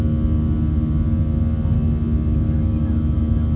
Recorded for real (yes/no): yes